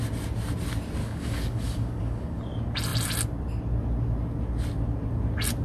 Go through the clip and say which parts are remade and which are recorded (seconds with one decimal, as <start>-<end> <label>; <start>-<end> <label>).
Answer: 0.0-1.0 recorded; 1.0-2.4 remade; 2.4-5.6 recorded

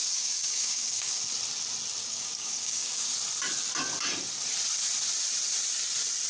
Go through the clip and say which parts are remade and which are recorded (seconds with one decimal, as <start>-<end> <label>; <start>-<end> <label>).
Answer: 0.0-1.2 remade; 1.2-2.0 recorded; 2.0-3.1 remade; 3.1-6.3 recorded

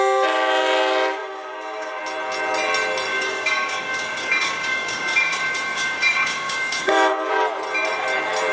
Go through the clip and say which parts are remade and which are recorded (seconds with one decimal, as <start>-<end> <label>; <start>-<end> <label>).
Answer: 0.0-1.2 recorded; 1.2-2.0 remade; 2.0-3.1 recorded; 3.1-7.3 remade; 7.3-8.5 recorded